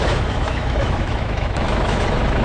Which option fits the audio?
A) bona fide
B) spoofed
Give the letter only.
B